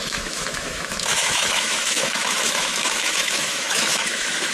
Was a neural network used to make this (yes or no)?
yes